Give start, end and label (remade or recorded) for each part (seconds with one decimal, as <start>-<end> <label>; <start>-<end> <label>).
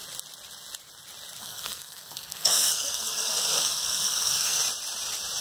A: 0.0-1.4 recorded; 1.4-4.6 remade; 4.6-5.4 recorded